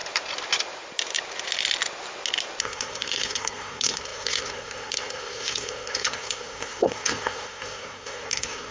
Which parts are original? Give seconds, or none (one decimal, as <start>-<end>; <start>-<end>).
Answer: 0.0-2.6